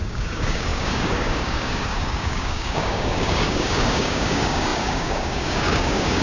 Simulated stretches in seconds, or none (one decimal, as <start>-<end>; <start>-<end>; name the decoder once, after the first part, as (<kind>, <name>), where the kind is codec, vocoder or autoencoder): 0.0-6.2 (codec, DAC)